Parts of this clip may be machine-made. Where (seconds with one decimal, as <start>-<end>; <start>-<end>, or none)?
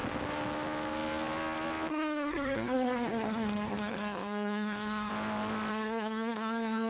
1.9-5.1; 5.7-6.9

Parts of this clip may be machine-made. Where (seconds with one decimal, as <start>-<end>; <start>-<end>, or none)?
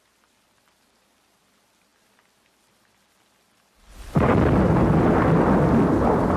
none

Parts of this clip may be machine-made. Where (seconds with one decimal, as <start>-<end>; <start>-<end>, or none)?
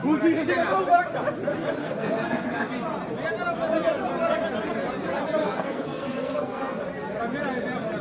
1.8-2.7; 5.4-6.8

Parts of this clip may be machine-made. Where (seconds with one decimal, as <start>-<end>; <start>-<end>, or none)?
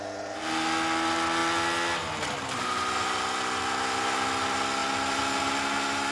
none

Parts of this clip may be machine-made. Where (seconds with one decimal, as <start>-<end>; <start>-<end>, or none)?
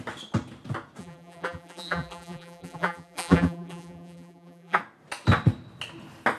1.0-4.8